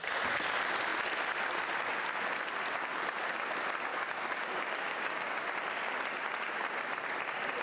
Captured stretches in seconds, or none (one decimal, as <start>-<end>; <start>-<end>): 0.0-3.9; 5.4-7.6